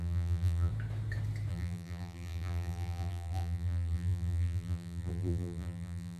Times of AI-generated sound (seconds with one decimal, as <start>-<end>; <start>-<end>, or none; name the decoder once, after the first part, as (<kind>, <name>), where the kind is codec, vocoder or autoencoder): 0.0-0.7 (vocoder, BigVGAN v2); 1.5-6.2

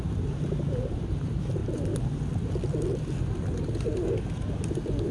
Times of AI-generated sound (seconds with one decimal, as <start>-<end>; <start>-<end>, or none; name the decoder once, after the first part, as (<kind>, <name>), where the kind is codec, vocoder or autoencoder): 0.0-1.6 (vocoder, BigVGAN v2); 4.6-5.1

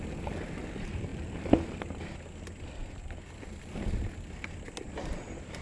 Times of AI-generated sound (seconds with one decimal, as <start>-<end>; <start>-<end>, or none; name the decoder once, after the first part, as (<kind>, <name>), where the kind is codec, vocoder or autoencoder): 1.1-1.8 (vocoder, BigVGAN v2)

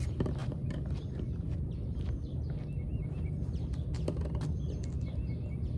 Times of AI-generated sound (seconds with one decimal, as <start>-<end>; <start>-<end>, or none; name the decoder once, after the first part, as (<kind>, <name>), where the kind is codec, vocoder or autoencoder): 0.4-2.4 (vocoder, BigVGAN v2); 2.9-3.9

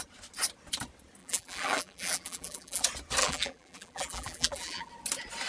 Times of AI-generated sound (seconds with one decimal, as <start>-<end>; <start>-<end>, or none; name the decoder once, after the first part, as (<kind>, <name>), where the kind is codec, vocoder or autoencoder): 1.2-2.8 (vocoder, BigVGAN v2); 3.2-4.9

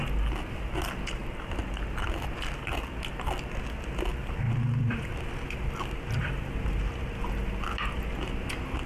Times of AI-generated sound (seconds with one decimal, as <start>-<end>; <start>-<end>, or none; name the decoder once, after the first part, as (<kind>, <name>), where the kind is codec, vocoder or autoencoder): 4.1-6.0 (vocoder, BigVGAN v2)